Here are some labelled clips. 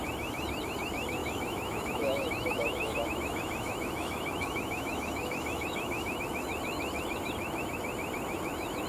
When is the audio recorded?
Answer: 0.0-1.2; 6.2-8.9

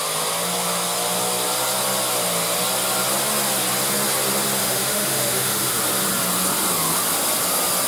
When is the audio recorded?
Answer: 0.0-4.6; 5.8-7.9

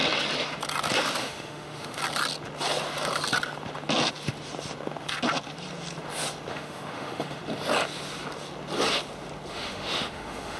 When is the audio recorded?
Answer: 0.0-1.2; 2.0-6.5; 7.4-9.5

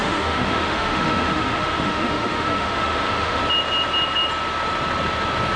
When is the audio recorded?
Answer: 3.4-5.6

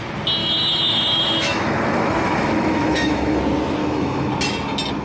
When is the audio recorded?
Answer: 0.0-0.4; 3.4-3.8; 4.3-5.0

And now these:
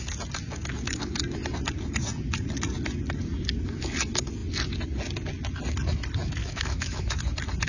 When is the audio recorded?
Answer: 0.0-6.4; 7.2-7.7

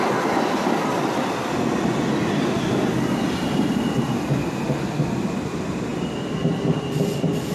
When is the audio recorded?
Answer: 0.0-7.5

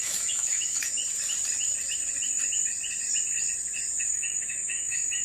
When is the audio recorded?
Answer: 1.0-4.1